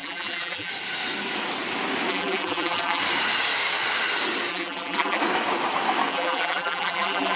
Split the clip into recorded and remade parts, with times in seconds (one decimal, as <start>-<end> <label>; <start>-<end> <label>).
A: 0.0-0.7 remade; 0.7-2.1 recorded; 2.1-3.0 remade; 3.0-4.5 recorded; 4.5-5.2 remade; 5.2-6.1 recorded; 6.1-7.4 remade